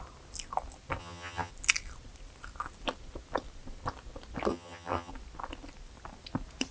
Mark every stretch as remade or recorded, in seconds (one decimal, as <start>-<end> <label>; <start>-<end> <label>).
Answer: 0.0-1.0 recorded; 1.0-1.5 remade; 1.5-4.5 recorded; 4.5-5.1 remade; 5.1-6.7 recorded